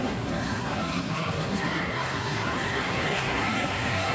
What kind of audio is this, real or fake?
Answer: fake